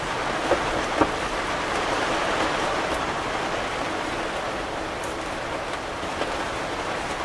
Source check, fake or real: fake